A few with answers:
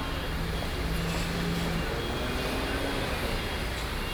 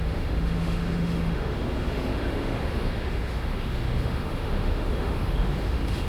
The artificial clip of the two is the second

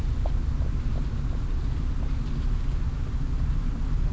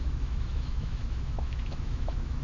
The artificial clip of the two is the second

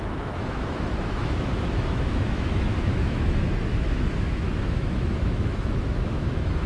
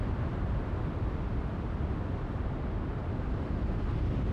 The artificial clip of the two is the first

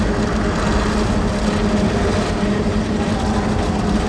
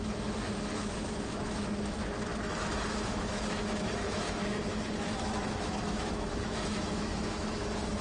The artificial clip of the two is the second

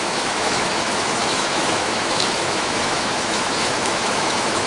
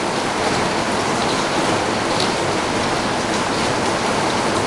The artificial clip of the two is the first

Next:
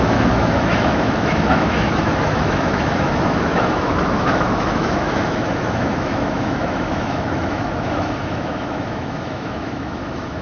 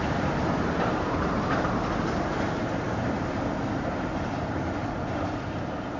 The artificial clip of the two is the first